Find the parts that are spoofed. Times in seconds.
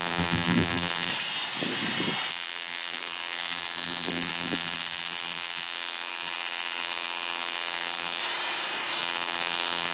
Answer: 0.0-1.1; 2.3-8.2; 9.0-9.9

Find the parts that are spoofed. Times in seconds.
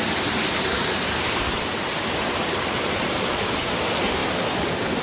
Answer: 0.7-3.6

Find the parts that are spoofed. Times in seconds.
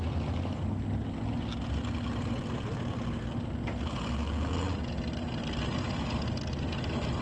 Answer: 4.2-4.9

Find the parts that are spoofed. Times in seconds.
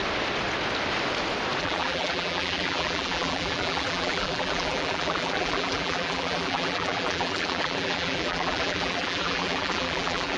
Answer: 1.6-10.4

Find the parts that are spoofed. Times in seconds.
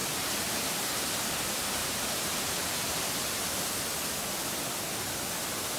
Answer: 0.0-1.3; 1.8-3.4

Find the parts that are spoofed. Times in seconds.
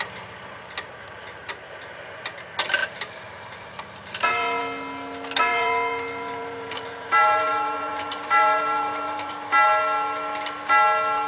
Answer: 2.8-4.6; 5.5-9.3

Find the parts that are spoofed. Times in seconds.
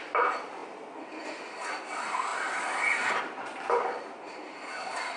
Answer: 0.6-1.2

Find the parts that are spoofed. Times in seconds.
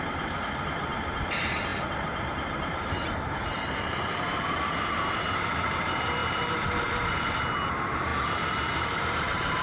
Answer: 0.0-9.6